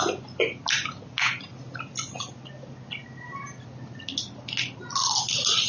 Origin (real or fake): real